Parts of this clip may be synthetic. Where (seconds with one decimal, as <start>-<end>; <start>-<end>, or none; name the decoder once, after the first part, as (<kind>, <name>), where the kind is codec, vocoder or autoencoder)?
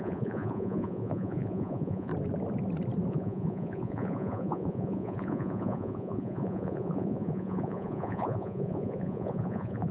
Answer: 0.0-2.1 (vocoder, Vocos); 3.1-9.9